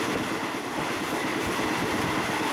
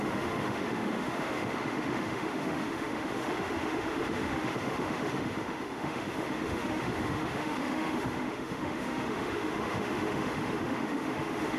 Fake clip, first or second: second